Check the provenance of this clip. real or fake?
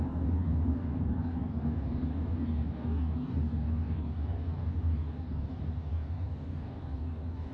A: fake